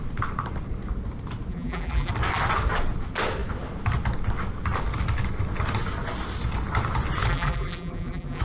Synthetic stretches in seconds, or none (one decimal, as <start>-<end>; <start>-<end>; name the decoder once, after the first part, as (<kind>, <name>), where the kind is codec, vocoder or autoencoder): 1.5-2.1 (vocoder, BigVGAN v2); 7.3-8.4